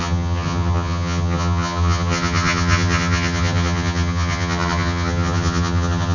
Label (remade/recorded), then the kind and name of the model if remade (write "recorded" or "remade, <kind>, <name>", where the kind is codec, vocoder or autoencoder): remade, vocoder, HiFi-GAN